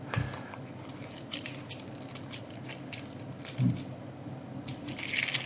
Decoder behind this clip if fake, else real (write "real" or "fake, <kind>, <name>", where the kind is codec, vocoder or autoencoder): real